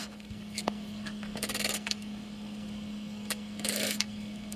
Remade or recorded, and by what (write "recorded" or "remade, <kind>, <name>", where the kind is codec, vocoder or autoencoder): remade, codec, SNAC